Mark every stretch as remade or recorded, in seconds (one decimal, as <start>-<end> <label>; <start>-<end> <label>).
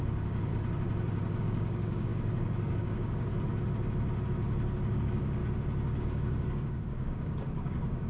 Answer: 0.0-0.5 remade; 0.5-1.4 recorded; 1.4-3.3 remade; 3.3-4.9 recorded; 4.9-5.4 remade; 5.4-6.0 recorded; 6.0-8.1 remade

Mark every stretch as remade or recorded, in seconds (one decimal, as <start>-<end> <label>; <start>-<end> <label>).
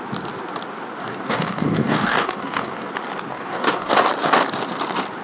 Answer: 0.0-1.0 recorded; 1.0-2.9 remade; 2.9-3.3 recorded; 3.3-3.9 remade; 3.9-5.2 recorded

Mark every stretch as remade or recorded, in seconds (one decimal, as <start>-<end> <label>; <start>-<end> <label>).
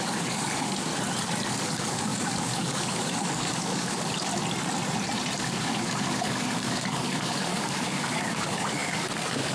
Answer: 0.0-0.9 remade; 0.9-1.5 recorded; 1.5-4.3 remade; 4.3-5.4 recorded; 5.4-9.5 remade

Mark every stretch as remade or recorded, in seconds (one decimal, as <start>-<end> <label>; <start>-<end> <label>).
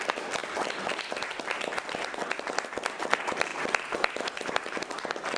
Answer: 0.0-5.4 recorded